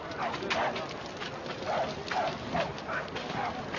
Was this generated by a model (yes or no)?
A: no